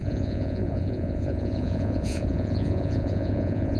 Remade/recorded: remade